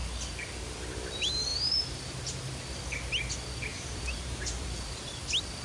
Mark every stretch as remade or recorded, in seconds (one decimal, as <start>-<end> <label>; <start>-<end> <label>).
0.0-1.5 recorded; 1.5-2.5 remade; 2.5-3.7 recorded; 3.7-5.1 remade; 5.1-5.6 recorded